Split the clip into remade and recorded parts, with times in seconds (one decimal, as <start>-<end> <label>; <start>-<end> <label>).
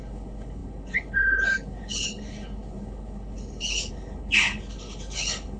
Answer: 0.0-5.6 remade